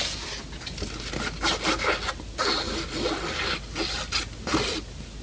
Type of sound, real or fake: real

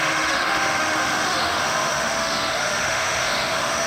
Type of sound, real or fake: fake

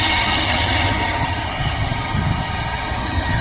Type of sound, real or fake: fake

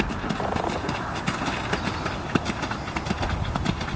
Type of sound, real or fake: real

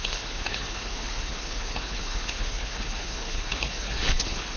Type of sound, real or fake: fake